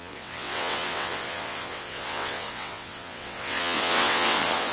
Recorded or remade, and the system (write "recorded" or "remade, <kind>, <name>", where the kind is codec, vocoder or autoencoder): remade, vocoder, WaveNeXt